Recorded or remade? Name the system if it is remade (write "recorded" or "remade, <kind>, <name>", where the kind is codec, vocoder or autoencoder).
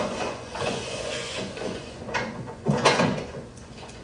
remade, vocoder, Vocos